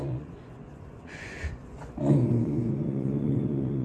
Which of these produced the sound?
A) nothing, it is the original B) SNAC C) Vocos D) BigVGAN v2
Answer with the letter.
C